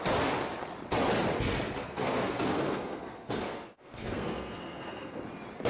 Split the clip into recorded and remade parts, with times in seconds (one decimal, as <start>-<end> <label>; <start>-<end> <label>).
0.0-1.8 recorded; 1.8-5.2 remade; 5.2-5.7 recorded